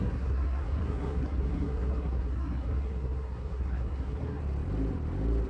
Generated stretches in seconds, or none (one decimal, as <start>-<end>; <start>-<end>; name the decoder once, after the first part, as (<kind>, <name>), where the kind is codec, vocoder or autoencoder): 0.0-4.4 (codec, SNAC)